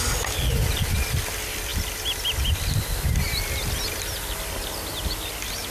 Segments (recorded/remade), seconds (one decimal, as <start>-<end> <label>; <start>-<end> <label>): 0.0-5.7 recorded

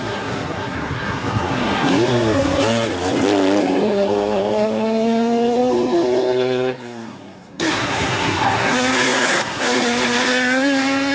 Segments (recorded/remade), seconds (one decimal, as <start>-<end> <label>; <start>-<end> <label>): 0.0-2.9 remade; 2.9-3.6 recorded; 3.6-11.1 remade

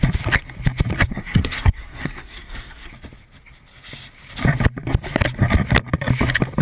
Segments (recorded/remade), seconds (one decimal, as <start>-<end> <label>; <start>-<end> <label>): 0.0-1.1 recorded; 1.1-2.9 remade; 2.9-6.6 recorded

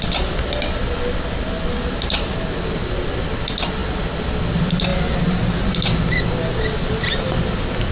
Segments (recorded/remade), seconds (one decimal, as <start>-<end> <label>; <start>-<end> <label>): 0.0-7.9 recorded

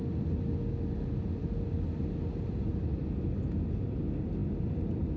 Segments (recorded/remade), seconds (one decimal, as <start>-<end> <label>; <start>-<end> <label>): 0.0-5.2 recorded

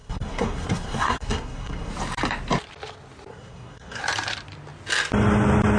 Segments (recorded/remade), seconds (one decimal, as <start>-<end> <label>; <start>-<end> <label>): 0.0-1.9 remade; 1.9-3.3 recorded; 3.3-4.0 remade; 4.0-5.8 recorded

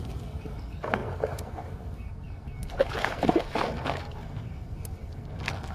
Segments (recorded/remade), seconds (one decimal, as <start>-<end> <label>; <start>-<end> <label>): 0.0-5.7 remade

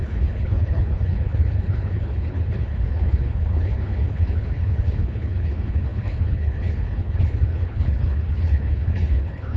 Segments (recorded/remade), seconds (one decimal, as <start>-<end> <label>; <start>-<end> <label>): 0.0-9.6 remade